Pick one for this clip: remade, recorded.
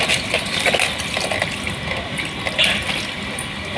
recorded